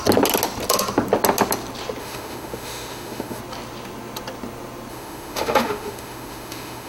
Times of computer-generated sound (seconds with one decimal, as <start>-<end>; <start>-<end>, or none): 2.0-3.4; 4.9-6.9